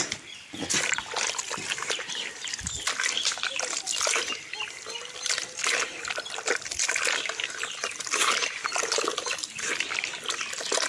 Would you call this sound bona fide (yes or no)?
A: yes